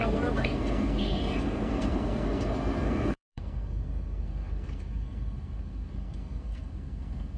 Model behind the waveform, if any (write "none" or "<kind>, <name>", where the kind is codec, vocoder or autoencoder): codec, SNAC